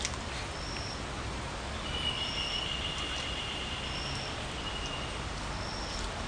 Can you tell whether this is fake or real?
real